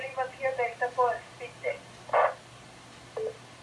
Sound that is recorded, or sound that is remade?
recorded